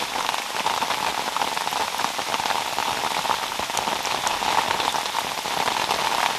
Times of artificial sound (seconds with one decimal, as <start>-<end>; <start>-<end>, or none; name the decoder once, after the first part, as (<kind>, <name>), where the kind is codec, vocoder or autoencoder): none